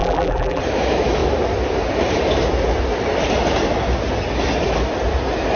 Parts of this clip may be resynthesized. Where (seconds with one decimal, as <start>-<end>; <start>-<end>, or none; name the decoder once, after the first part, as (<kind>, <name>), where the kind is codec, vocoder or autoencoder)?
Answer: 0.0-0.6 (vocoder, BigVGAN v2)